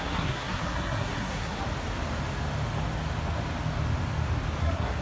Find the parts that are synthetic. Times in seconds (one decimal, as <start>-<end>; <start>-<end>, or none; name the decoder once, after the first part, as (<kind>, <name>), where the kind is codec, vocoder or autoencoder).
0.0-1.6 (codec, SNAC); 4.6-5.0